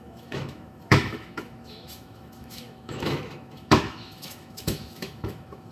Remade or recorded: remade